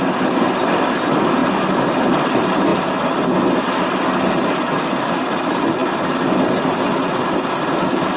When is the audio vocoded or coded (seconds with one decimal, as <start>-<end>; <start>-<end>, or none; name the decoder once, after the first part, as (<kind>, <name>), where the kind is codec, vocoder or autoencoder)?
none